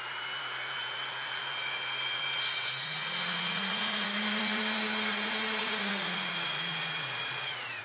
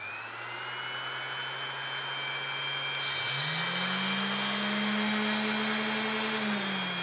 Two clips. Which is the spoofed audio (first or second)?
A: first